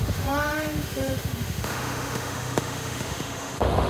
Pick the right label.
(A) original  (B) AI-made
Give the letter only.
B